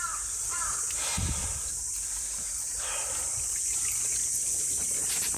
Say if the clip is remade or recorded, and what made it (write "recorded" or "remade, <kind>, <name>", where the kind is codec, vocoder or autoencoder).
recorded